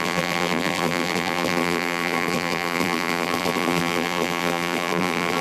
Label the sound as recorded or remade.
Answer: remade